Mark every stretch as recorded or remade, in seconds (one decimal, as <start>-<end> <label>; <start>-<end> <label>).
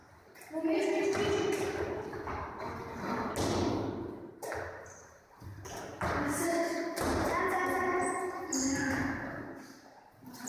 0.0-10.5 recorded